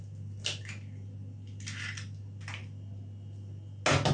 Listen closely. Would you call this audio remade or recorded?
recorded